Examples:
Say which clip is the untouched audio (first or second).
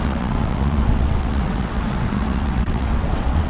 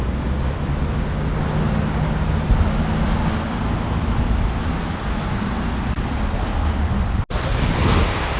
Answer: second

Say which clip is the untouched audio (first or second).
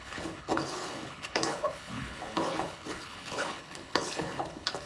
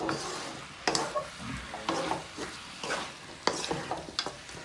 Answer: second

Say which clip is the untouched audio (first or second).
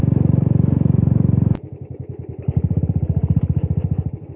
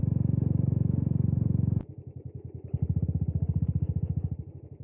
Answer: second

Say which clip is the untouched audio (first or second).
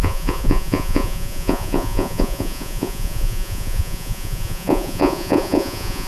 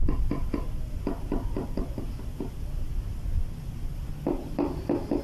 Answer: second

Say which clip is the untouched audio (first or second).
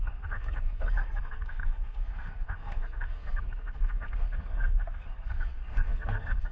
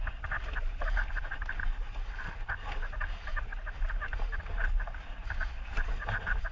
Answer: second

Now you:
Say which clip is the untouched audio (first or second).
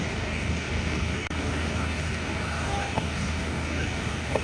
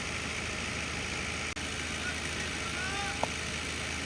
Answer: second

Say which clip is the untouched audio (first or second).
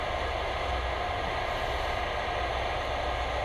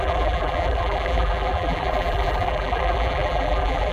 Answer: first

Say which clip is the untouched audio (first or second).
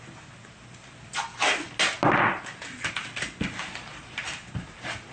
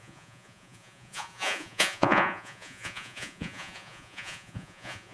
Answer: first